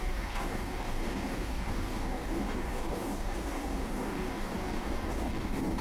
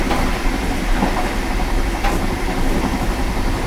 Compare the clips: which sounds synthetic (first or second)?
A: first